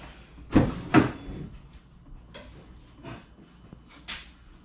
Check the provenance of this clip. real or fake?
real